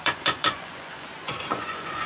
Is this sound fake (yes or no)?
yes